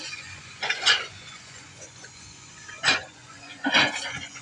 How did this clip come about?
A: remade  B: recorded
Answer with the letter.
A